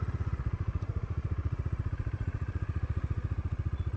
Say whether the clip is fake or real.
fake